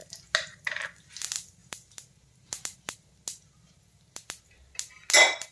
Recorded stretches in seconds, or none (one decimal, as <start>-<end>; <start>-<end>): 0.0-5.5